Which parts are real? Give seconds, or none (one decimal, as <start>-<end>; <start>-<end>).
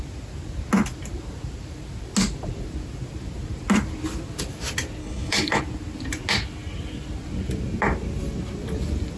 0.0-5.0; 5.6-9.2